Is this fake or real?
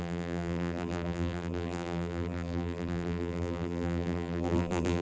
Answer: fake